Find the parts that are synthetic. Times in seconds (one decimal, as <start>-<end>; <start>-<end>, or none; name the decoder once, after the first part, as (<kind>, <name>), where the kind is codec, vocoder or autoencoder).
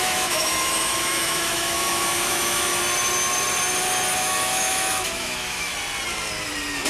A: 0.0-2.7 (autoencoder, DAC-VAE); 4.2-5.7